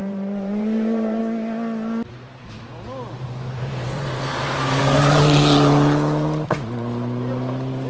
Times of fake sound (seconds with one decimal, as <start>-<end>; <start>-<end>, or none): 0.0-1.2; 3.1-4.8